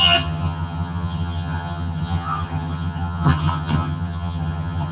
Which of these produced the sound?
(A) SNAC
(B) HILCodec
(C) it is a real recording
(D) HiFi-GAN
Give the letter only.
D